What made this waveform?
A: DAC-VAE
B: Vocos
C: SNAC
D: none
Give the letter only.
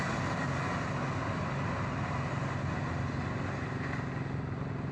D